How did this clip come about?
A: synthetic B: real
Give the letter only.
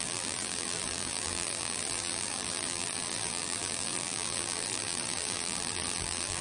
A